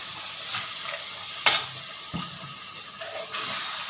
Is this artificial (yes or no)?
no